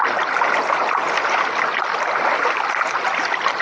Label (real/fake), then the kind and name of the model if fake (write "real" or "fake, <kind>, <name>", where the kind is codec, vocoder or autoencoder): real